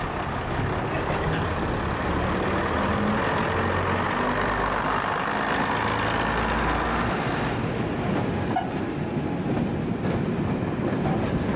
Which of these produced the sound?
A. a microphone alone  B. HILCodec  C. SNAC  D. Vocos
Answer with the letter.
A